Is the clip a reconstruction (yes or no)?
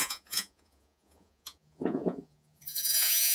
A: yes